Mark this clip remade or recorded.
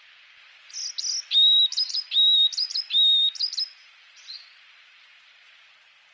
recorded